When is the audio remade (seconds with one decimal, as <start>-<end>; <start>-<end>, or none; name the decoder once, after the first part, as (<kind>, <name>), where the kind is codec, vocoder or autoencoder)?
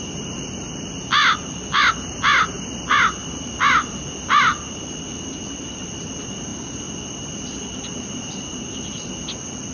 1.2-1.9 (vocoder, BigVGAN v2); 3.2-3.9; 4.5-5.9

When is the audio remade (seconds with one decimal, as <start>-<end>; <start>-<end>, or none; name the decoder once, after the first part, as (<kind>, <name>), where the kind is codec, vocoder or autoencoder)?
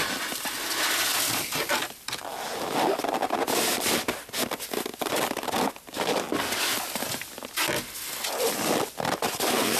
none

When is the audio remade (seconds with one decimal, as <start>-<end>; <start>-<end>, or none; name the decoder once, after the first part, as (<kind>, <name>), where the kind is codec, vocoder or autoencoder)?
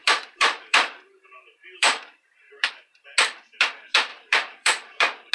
0.0-2.7 (vocoder, BigVGAN v2); 4.1-5.3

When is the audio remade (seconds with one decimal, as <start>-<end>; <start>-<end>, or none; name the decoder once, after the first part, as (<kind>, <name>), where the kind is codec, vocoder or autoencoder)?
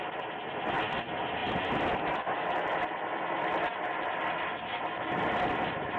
none